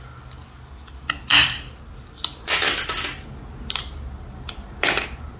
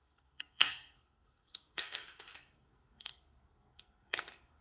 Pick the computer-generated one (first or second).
second